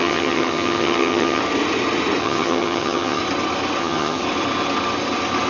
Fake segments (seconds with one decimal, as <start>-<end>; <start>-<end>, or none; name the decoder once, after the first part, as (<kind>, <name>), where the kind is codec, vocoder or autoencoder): 0.0-1.4 (vocoder, HiFi-GAN); 2.2-3.2; 3.8-4.2